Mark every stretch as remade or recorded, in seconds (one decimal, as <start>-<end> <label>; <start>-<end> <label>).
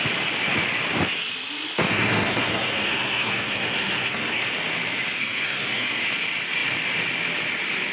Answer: 0.0-1.9 recorded; 1.9-4.4 remade; 4.4-5.2 recorded; 5.2-6.0 remade; 6.0-7.9 recorded